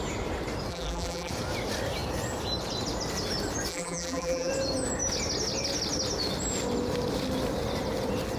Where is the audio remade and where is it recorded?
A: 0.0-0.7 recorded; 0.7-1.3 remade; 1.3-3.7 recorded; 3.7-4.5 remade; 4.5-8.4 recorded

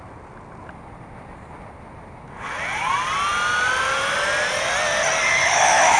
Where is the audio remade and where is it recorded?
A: 0.0-5.4 recorded; 5.4-6.0 remade